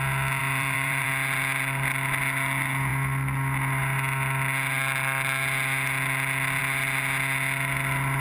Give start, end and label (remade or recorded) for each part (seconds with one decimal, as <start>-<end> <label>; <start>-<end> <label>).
0.0-0.4 recorded; 0.4-1.1 remade; 1.1-8.2 recorded